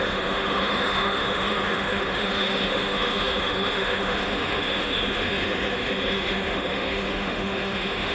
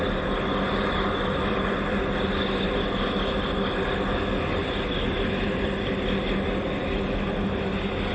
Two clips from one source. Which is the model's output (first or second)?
first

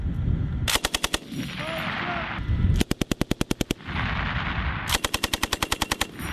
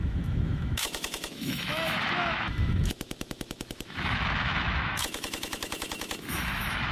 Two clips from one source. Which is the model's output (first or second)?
second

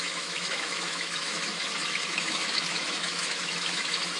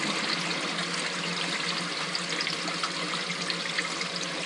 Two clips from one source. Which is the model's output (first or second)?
first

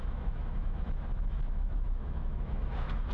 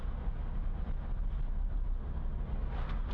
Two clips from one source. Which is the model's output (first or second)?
first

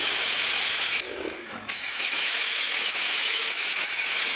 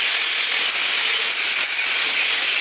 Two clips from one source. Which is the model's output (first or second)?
first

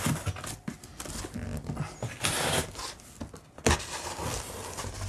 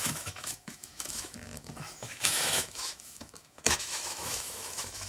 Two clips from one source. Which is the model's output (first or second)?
second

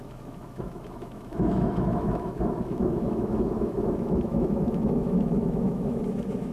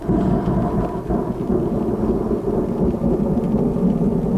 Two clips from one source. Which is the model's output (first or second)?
first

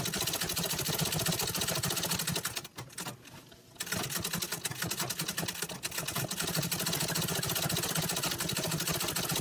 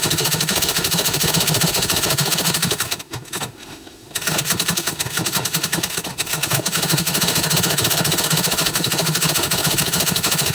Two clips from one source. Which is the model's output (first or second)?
second